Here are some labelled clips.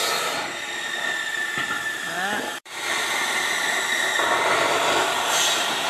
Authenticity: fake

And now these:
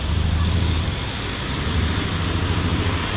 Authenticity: real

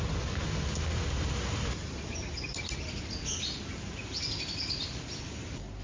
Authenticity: real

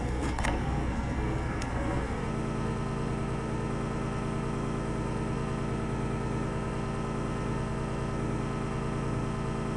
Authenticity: fake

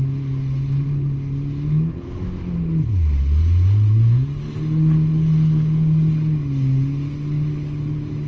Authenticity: real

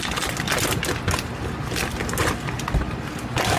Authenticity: real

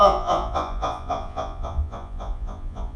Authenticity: fake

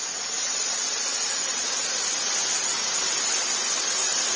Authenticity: real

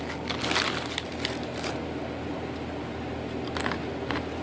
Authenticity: real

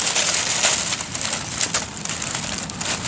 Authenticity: real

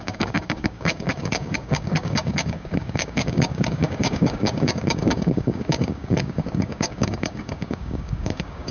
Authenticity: fake